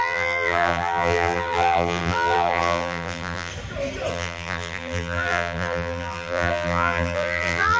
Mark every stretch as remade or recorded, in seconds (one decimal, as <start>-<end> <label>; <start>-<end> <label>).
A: 0.0-3.5 remade; 3.5-4.1 recorded; 4.1-7.8 remade